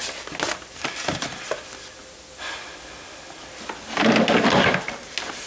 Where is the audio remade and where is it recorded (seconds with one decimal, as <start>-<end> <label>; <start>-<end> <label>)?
0.0-5.5 recorded